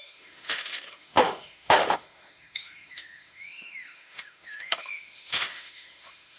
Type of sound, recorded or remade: remade